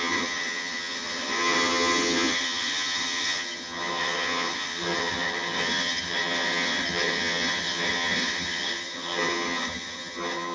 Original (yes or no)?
no